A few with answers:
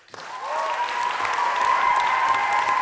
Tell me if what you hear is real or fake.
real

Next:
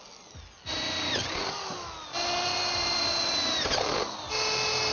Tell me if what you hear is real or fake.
real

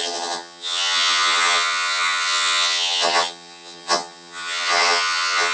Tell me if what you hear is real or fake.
fake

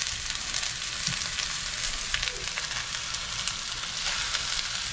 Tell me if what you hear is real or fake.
real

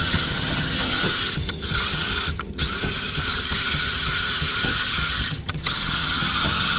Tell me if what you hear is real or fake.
fake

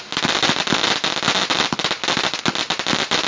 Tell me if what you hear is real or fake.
real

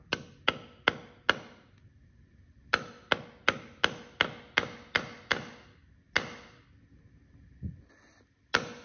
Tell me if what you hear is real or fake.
real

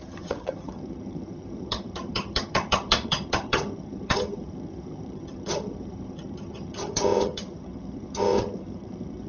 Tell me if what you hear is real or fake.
fake